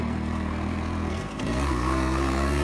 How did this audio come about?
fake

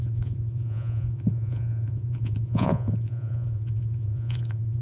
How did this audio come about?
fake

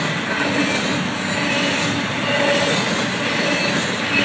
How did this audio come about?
real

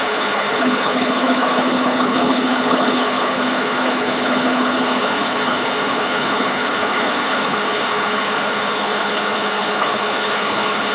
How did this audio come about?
fake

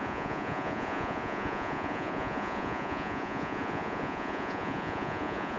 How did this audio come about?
fake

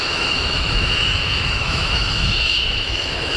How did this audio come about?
fake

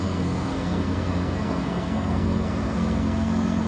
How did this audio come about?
fake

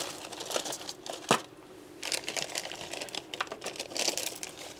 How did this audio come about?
real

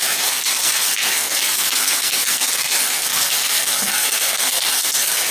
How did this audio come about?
fake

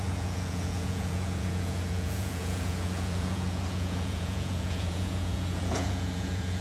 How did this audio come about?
fake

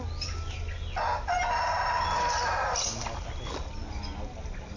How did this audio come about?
real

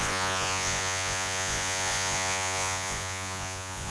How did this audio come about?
fake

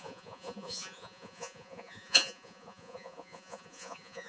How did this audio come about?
fake